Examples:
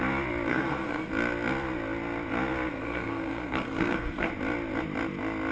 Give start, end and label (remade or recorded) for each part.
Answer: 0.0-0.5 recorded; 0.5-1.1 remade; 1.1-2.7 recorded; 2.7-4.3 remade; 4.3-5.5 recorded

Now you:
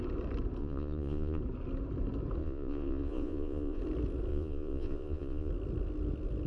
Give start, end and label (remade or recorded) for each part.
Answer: 0.0-0.6 recorded; 0.6-1.4 remade; 1.4-2.4 recorded; 2.4-3.8 remade; 3.8-4.3 recorded; 4.3-5.5 remade; 5.5-6.5 recorded

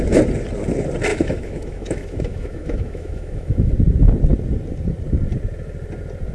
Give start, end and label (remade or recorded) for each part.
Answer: 0.0-1.1 recorded; 1.1-3.7 remade; 3.7-6.3 recorded

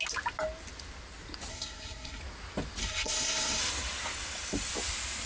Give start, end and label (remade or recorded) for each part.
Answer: 0.0-1.5 recorded; 1.5-2.2 remade; 2.2-2.8 recorded; 2.8-3.6 remade; 3.6-5.3 recorded

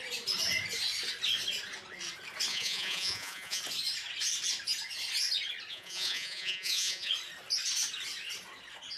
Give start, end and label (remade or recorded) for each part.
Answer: 0.0-2.5 recorded; 2.5-3.6 remade; 3.6-5.7 recorded; 5.7-7.1 remade; 7.1-9.0 recorded

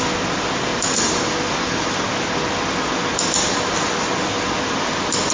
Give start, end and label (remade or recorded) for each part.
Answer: 0.0-5.3 recorded

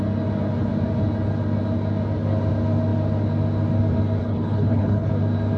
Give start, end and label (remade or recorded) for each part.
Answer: 0.0-4.2 recorded; 4.2-5.1 remade; 5.1-5.6 recorded